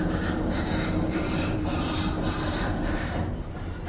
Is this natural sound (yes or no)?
no